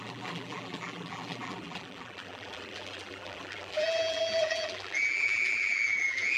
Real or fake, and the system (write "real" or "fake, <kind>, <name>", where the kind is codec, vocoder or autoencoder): fake, vocoder, BigVGAN v2